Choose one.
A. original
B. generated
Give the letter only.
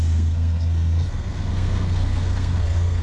B